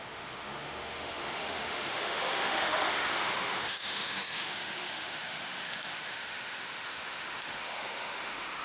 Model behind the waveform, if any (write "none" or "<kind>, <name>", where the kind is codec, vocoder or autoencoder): autoencoder, DAC-VAE